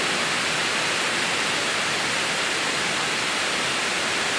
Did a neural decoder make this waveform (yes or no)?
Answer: no